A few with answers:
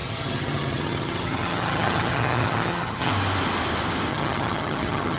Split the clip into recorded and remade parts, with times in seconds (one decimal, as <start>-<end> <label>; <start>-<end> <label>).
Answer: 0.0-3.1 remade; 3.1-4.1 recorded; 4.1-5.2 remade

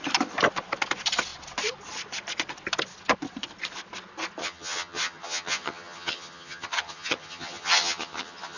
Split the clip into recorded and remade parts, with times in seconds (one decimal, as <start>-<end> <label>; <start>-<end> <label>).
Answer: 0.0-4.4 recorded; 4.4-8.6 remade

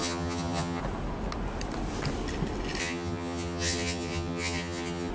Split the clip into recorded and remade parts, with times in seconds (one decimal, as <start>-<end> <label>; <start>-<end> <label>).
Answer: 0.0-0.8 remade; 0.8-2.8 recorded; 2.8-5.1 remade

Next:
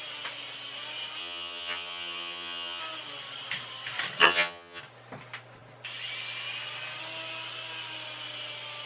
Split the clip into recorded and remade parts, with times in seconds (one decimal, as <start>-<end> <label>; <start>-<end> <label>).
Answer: 0.0-1.2 recorded; 1.2-2.8 remade; 2.8-4.2 recorded; 4.2-4.8 remade; 4.8-8.9 recorded

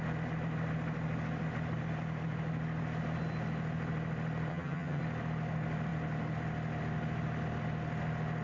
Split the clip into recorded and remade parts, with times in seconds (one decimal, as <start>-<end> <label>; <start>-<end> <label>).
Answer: 0.0-4.5 recorded; 4.5-5.0 remade; 5.0-8.4 recorded

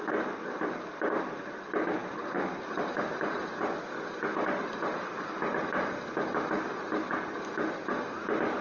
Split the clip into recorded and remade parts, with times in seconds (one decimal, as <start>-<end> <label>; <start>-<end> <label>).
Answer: 0.0-8.6 recorded

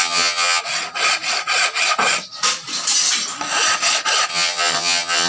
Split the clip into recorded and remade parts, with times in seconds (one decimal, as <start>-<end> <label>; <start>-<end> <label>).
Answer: 0.0-0.6 remade; 0.6-4.3 recorded; 4.3-5.3 remade

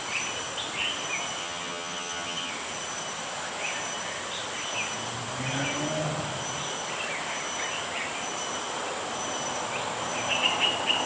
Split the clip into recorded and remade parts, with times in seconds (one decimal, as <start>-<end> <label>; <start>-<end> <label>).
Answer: 0.0-1.4 recorded; 1.4-2.5 remade; 2.5-11.1 recorded